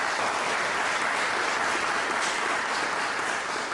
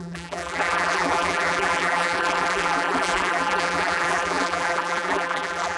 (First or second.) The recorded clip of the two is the first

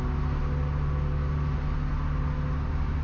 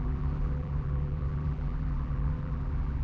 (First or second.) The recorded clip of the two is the first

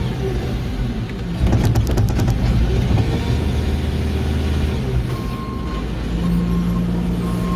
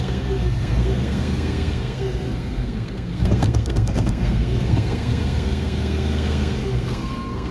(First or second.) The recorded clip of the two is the first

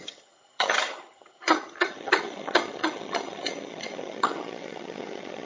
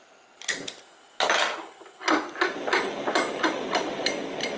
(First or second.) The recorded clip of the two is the second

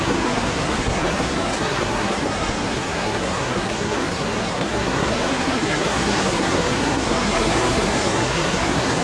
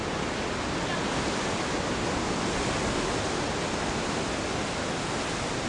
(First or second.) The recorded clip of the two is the second